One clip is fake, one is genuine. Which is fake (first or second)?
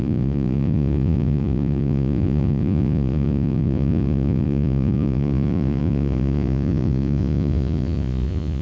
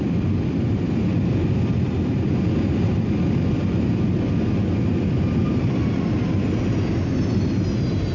first